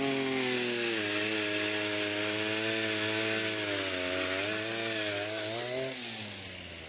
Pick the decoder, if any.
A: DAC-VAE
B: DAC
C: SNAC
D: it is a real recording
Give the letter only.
D